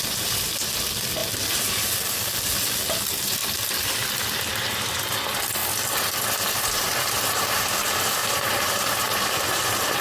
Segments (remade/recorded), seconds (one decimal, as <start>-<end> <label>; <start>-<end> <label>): 0.0-8.2 recorded; 8.2-9.6 remade; 9.6-10.0 recorded